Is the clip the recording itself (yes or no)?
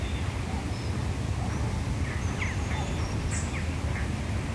yes